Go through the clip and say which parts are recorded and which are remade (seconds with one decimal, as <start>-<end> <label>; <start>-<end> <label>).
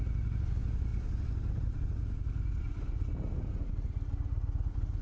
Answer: 0.0-5.0 recorded